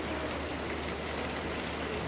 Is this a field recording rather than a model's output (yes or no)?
yes